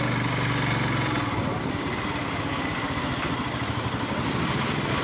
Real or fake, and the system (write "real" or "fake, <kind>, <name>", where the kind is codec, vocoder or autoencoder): real